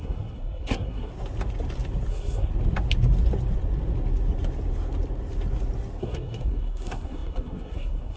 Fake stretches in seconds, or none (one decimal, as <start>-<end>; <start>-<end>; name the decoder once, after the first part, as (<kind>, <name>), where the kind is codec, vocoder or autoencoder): 0.0-1.1 (codec, SNAC); 2.1-2.5; 6.0-8.2